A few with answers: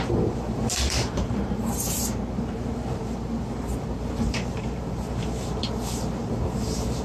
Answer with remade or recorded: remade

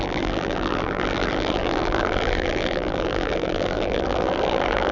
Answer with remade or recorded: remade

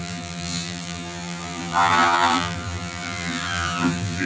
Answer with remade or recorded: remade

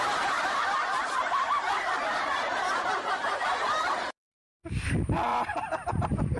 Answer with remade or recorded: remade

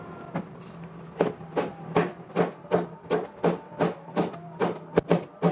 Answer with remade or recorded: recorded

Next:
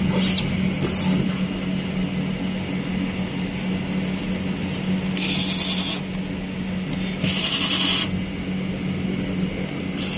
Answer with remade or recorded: recorded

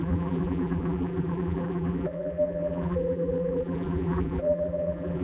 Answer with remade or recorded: remade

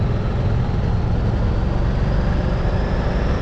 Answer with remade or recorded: recorded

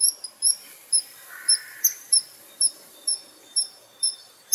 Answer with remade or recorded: remade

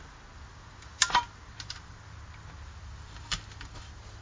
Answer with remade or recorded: recorded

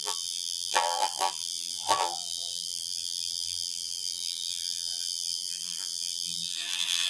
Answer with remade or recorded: remade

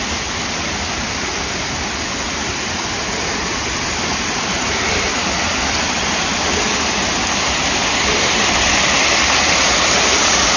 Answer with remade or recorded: recorded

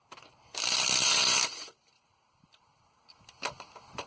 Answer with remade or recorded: recorded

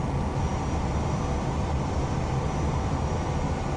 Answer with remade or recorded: recorded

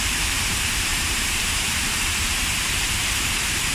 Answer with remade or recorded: remade